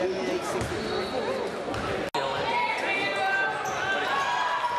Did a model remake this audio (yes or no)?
no